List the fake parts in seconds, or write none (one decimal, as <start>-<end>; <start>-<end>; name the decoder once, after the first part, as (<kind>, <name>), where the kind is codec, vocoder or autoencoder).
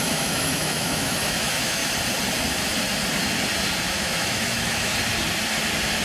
0.0-1.8 (autoencoder, DAC-VAE); 3.9-4.9